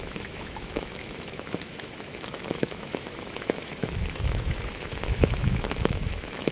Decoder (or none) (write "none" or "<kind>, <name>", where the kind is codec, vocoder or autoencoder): autoencoder, DAC-VAE